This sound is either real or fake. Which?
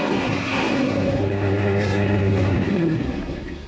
fake